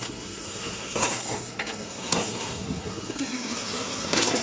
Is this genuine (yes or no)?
no